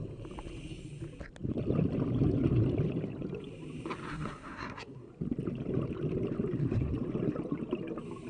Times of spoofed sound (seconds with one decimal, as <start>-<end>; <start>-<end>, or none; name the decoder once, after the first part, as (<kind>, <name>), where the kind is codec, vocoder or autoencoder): 4.1-5.1 (codec, SNAC)